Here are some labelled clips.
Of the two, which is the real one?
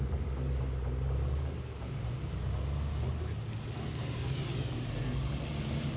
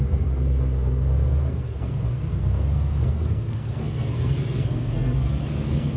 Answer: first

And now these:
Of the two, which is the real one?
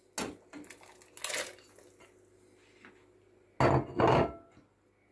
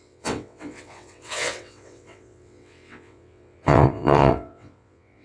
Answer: first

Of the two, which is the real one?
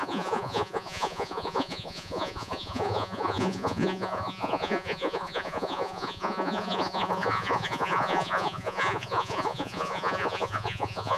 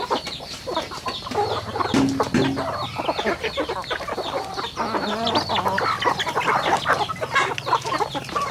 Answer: second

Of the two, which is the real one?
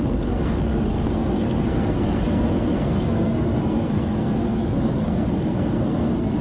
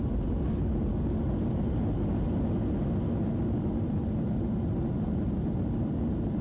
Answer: second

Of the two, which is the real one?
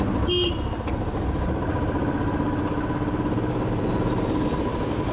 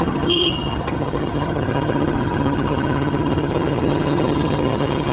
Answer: first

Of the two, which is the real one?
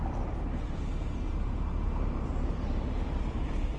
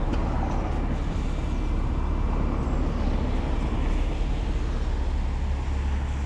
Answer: second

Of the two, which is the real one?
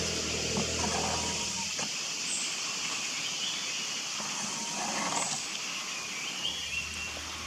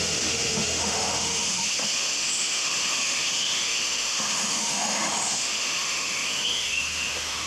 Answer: first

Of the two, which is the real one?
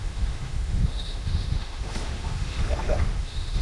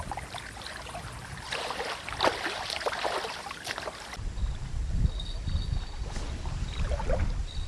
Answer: second